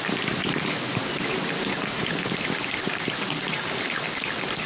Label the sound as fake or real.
real